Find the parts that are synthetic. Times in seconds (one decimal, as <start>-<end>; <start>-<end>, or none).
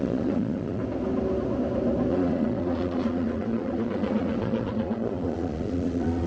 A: 0.0-0.8; 2.1-6.3